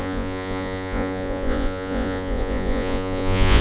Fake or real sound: fake